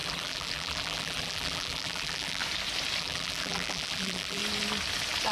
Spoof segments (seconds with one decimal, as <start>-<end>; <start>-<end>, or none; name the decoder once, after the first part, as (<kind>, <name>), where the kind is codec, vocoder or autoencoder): 0.0-2.4 (vocoder, BigVGAN v2); 3.0-4.4

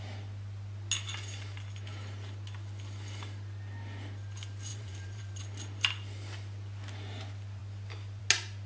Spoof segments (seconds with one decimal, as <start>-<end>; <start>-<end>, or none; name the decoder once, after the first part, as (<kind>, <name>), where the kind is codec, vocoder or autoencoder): 4.7-5.4 (vocoder, BigVGAN v2)